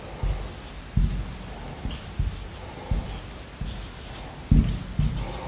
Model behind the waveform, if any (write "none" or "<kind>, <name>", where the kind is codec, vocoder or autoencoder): none